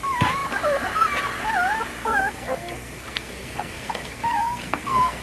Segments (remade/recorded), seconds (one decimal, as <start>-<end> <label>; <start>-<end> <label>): 0.0-2.0 recorded; 2.0-5.2 remade